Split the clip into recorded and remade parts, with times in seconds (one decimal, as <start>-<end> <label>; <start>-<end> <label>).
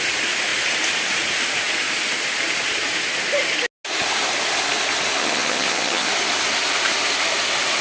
0.0-5.2 recorded; 5.2-6.1 remade; 6.1-7.8 recorded